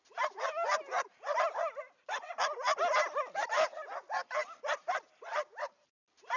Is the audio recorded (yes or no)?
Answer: yes